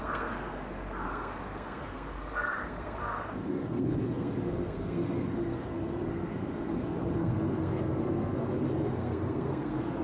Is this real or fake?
fake